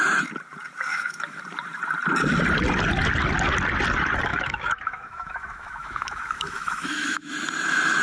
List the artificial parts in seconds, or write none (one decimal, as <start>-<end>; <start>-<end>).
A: 0.9-1.4; 4.3-7.3